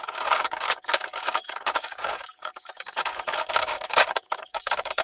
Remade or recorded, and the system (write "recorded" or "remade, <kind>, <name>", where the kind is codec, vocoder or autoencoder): remade, codec, DAC